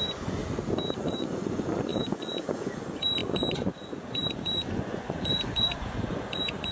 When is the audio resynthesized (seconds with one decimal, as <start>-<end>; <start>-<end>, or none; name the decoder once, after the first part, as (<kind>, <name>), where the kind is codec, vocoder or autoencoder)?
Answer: 0.0-0.4 (vocoder, Vocos); 1.0-6.7